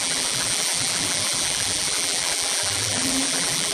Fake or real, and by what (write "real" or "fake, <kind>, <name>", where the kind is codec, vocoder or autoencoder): fake, vocoder, BigVGAN v2